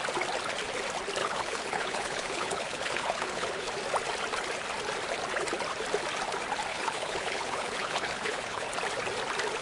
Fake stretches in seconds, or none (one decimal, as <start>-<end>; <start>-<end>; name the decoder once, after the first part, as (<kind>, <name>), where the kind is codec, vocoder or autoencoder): 1.2-3.7 (codec, HILCodec); 6.7-8.7